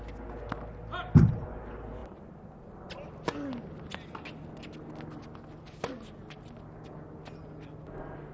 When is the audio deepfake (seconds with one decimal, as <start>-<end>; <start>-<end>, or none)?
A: none